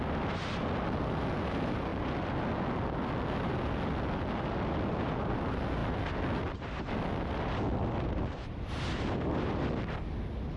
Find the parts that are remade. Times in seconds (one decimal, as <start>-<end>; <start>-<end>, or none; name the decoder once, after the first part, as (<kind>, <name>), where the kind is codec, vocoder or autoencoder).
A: none